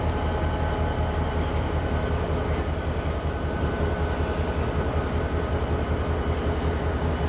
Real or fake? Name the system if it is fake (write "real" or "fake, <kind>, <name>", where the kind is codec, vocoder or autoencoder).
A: real